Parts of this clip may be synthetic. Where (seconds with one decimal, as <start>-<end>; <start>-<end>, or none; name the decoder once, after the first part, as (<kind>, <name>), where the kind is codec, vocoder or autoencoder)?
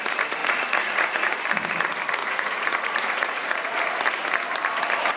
0.4-1.4 (vocoder, Vocos); 2.2-3.8